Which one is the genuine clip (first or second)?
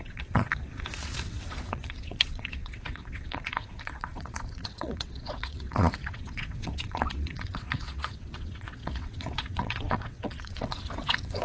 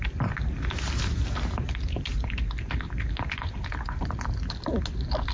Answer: second